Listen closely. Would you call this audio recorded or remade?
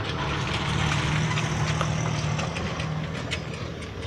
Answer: recorded